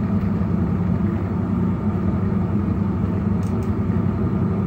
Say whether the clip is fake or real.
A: real